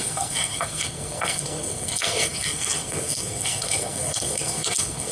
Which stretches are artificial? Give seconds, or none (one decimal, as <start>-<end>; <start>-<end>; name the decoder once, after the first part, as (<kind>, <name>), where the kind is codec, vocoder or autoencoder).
0.0-5.1 (codec, SNAC)

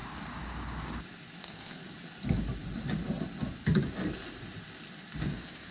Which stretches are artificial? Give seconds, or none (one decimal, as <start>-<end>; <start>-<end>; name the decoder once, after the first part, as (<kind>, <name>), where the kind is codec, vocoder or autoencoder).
1.4-1.8 (codec, SNAC); 5.2-5.7

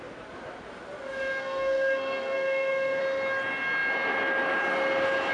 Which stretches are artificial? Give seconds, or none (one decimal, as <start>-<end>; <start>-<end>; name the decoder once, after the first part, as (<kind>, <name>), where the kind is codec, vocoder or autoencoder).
1.4-3.0 (codec, SNAC)

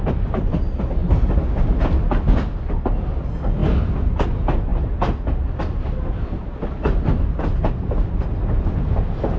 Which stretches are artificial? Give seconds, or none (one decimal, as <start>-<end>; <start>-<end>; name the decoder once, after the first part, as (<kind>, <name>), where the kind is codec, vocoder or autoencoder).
none

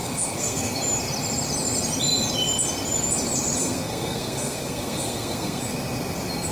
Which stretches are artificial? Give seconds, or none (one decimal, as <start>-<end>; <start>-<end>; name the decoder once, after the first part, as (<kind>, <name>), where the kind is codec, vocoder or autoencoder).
0.0-0.8 (codec, SNAC); 3.6-5.6

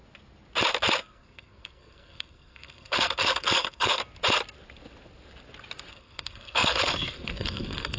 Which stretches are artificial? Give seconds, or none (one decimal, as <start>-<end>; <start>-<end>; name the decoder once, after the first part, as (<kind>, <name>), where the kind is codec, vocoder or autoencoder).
1.0-4.0 (codec, SNAC); 5.9-8.0